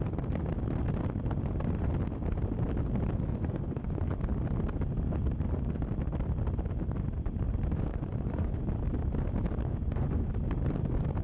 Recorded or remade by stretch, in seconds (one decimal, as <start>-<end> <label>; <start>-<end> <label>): 0.0-3.3 recorded; 3.3-4.1 remade; 4.1-7.9 recorded; 7.9-8.6 remade; 8.6-9.8 recorded; 9.8-10.3 remade; 10.3-11.2 recorded